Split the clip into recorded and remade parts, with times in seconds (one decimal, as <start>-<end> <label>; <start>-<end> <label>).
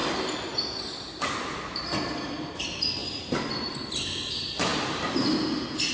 0.0-5.9 recorded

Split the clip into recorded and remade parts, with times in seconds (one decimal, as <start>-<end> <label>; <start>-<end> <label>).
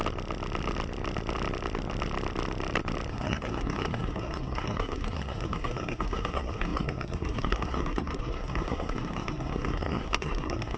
0.0-3.1 recorded; 3.1-10.8 remade